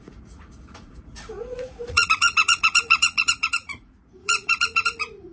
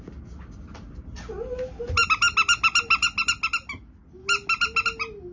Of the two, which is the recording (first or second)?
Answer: second